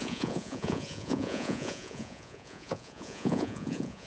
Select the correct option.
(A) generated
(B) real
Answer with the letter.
A